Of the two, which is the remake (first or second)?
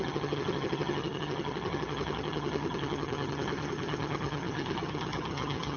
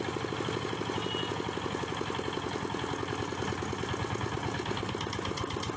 first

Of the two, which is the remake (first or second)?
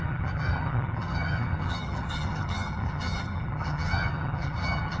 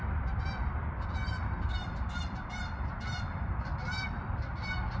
first